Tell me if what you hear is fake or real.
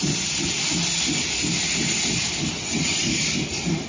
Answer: real